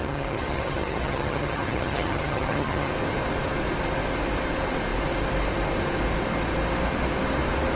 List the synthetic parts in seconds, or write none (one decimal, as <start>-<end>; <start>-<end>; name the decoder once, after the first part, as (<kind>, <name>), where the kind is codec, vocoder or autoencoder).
0.0-2.9 (vocoder, HiFi-GAN)